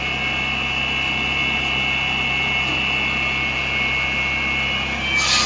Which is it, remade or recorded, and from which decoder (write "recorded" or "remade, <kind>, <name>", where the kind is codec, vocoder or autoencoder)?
recorded